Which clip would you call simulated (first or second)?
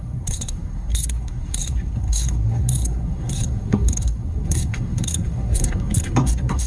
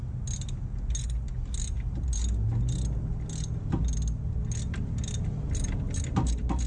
first